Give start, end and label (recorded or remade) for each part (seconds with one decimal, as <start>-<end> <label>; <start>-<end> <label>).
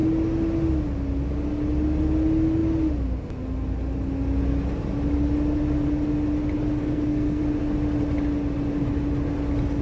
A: 0.0-6.8 recorded; 6.8-7.4 remade; 7.4-9.8 recorded